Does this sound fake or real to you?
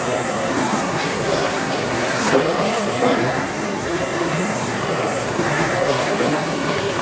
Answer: fake